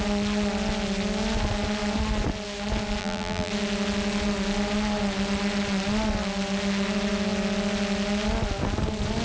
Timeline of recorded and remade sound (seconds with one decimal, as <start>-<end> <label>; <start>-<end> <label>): 0.0-3.0 recorded; 3.0-3.5 remade; 3.5-9.2 recorded